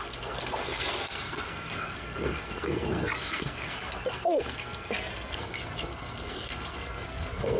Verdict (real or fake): fake